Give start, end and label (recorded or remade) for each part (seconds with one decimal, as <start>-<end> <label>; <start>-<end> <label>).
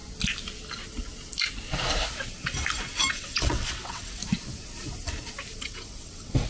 0.0-3.1 recorded; 3.1-4.2 remade; 4.2-5.6 recorded; 5.6-6.5 remade